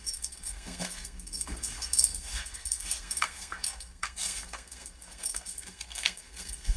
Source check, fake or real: fake